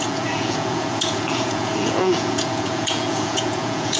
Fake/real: fake